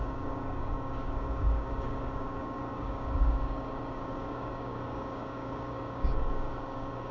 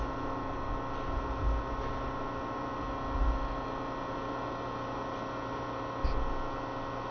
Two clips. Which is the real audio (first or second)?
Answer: second